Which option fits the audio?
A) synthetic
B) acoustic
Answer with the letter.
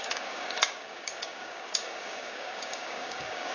A